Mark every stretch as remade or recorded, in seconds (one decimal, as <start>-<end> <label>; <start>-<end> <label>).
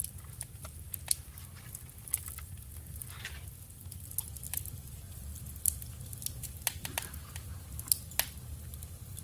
0.0-9.2 recorded